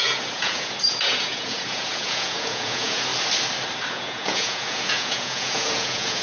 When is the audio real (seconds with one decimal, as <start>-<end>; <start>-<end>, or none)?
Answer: 3.1-3.9